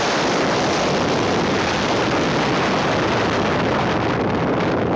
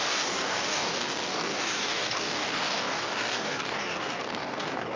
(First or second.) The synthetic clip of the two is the second